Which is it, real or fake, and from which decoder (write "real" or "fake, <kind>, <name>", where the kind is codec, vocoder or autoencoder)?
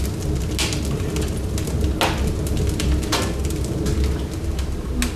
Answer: real